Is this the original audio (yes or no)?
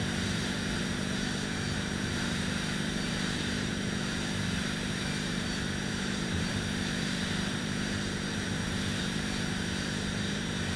no